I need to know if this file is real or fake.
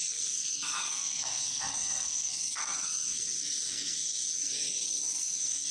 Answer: fake